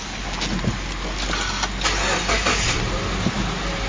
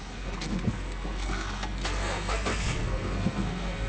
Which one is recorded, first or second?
first